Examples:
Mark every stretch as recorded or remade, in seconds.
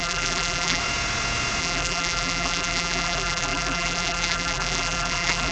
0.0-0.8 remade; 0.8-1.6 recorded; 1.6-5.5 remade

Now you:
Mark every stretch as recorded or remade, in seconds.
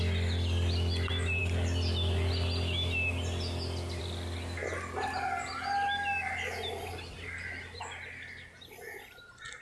0.0-9.6 recorded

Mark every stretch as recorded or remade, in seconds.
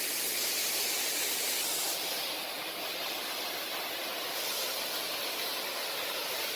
0.0-0.6 remade; 0.6-3.9 recorded; 3.9-6.6 remade